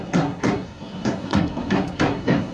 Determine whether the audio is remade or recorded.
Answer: remade